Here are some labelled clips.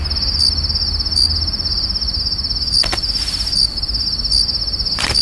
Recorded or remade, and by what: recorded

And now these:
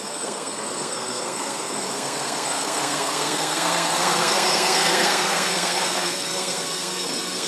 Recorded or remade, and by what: remade, codec, SNAC